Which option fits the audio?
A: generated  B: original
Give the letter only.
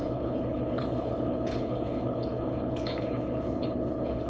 A